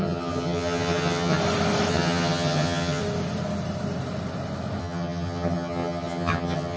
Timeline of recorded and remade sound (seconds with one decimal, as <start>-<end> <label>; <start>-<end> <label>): 0.0-1.4 remade; 1.4-1.9 recorded; 1.9-3.0 remade; 3.0-4.8 recorded; 4.8-6.8 remade